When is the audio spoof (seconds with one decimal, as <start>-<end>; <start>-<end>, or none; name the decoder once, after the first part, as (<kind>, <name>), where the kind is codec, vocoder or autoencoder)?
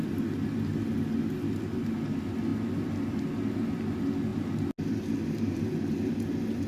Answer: none